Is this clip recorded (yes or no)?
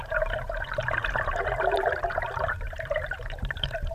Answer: no